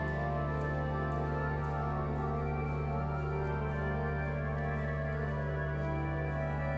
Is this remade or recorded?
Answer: recorded